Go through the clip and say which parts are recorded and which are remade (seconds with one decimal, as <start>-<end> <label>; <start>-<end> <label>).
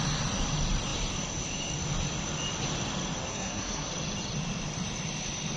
0.0-3.3 recorded; 3.3-3.9 remade; 3.9-5.6 recorded